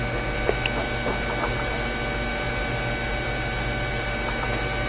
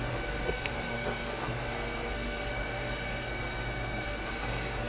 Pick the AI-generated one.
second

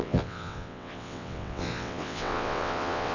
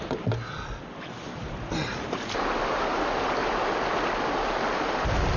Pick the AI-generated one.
first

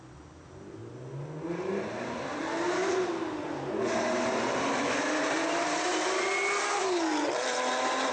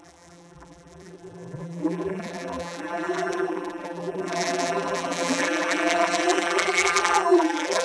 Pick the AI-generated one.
second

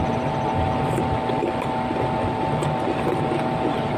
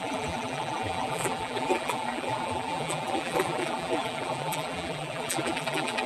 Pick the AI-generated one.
second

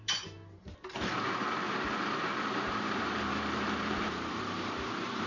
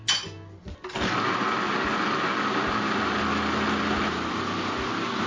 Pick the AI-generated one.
first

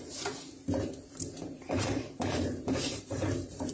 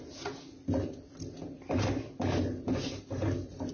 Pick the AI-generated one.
first